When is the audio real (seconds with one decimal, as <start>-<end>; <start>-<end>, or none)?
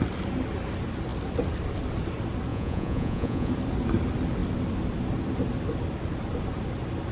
0.0-2.5; 3.5-7.1